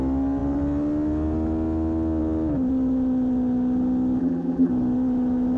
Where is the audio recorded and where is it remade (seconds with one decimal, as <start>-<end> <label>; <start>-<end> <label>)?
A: 0.0-4.2 recorded; 4.2-4.7 remade; 4.7-5.6 recorded